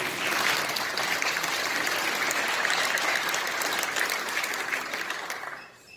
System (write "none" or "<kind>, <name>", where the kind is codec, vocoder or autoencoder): none